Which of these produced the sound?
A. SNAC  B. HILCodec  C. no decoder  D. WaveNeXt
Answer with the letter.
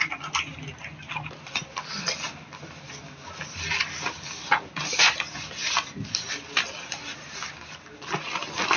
C